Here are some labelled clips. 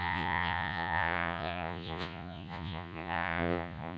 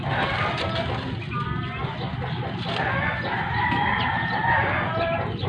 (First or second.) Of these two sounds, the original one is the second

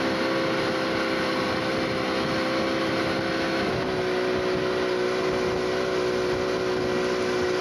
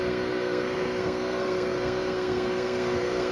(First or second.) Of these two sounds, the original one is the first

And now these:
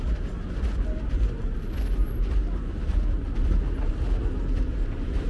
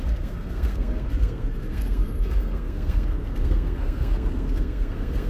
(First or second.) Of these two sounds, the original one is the first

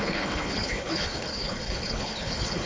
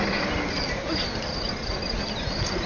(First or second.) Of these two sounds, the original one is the second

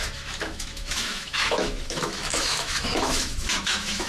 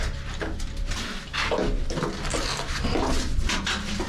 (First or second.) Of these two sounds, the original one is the second